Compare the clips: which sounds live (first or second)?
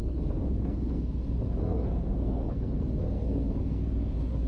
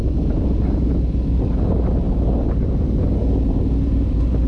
second